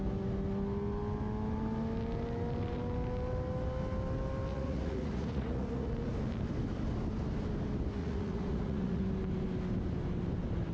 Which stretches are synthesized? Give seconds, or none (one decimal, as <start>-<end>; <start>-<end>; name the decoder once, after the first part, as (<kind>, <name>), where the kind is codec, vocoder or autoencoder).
4.5-5.9 (vocoder, Vocos); 8.0-9.0